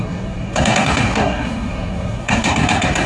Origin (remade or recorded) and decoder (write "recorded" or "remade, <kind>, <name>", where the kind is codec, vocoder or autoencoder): remade, codec, SNAC